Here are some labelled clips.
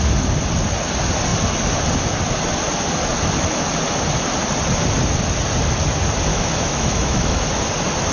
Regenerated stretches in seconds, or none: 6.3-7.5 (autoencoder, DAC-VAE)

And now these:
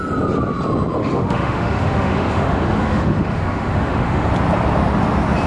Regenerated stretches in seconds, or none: 1.0-4.3 (autoencoder, DAC-VAE)

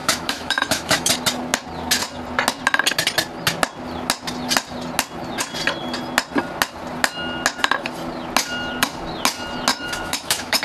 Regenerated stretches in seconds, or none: 0.0-1.1 (autoencoder, DAC-VAE); 9.7-10.6

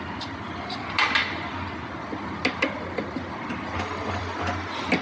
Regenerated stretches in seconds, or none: none

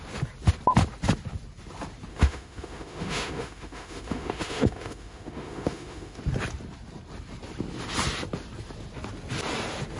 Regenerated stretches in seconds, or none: 2.1-6.2 (autoencoder, DAC-VAE)

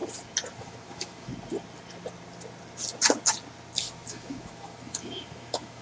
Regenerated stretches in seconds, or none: 0.6-1.3 (autoencoder, DAC-VAE); 4.1-5.8

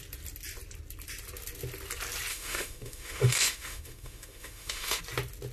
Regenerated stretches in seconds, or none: 2.3-5.0 (autoencoder, DAC-VAE)

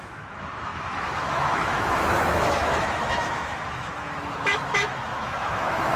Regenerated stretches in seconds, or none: 0.0-6.0 (autoencoder, DAC-VAE)